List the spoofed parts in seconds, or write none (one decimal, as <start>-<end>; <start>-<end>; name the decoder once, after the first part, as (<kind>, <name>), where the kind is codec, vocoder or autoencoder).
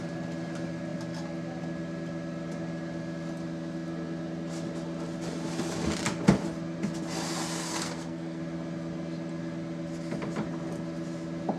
7.6-8.4 (codec, SNAC)